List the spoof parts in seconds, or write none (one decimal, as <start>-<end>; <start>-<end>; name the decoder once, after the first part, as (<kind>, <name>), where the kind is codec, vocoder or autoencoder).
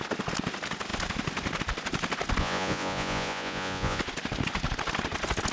2.4-4.0 (vocoder, Vocos)